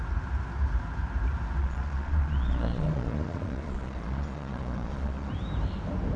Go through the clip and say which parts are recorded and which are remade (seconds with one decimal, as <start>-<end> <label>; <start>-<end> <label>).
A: 0.0-1.6 recorded; 1.6-5.3 remade; 5.3-6.2 recorded